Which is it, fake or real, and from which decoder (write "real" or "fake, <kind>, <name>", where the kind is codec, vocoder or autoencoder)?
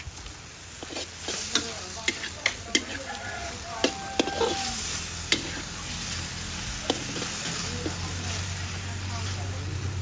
real